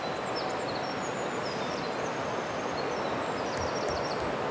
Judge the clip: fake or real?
real